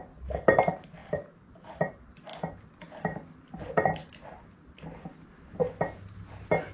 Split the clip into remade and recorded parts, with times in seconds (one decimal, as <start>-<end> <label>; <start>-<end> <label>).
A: 0.0-1.0 recorded; 1.0-1.9 remade; 1.9-2.3 recorded; 2.3-3.6 remade; 3.6-6.7 recorded